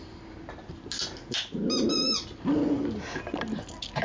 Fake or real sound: real